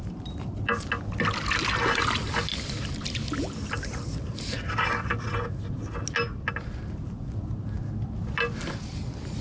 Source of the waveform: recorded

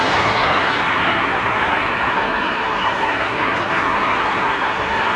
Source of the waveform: remade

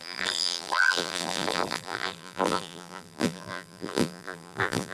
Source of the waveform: remade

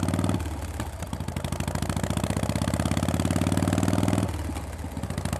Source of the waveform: recorded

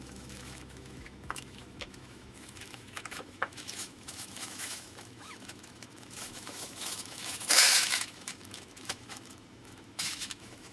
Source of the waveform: remade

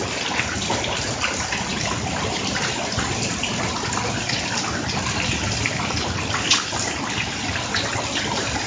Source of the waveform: recorded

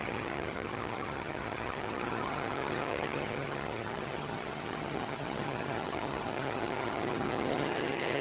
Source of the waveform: remade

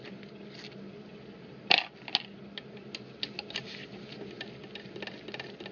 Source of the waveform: recorded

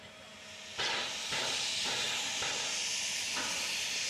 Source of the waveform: recorded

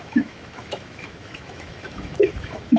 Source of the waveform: remade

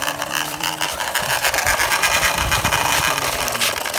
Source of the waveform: remade